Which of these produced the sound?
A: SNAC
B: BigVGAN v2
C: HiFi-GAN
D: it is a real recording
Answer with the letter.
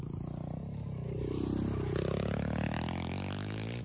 D